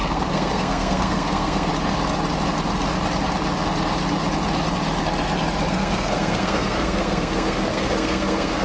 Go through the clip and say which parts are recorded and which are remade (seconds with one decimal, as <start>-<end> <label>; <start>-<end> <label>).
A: 0.0-1.7 remade; 1.7-5.7 recorded; 5.7-8.6 remade

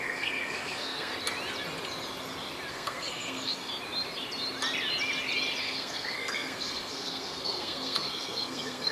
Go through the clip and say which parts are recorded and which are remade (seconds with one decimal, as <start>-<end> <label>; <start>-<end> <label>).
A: 0.0-1.1 remade; 1.1-2.7 recorded; 2.7-3.7 remade; 3.7-5.6 recorded; 5.6-8.9 remade

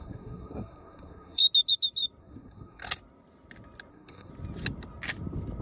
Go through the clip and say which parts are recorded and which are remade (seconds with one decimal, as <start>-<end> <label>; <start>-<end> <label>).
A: 0.0-1.4 remade; 1.4-2.2 recorded; 2.2-2.8 remade; 2.8-3.9 recorded; 3.9-4.3 remade; 4.3-5.6 recorded

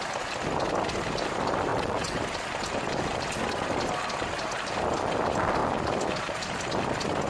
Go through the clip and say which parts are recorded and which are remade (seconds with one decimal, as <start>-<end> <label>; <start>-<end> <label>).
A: 0.0-1.7 recorded; 1.7-2.2 remade; 2.2-7.3 recorded

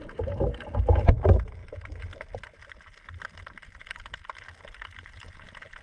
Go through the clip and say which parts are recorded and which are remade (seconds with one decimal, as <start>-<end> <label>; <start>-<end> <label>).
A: 0.0-5.8 recorded

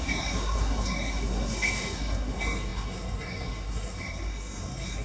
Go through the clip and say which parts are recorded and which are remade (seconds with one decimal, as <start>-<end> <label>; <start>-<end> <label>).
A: 0.0-5.0 remade

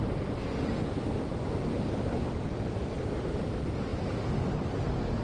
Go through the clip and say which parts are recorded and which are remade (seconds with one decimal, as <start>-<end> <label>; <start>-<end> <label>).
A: 0.0-5.2 recorded